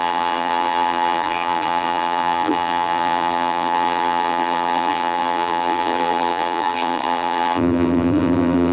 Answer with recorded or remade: remade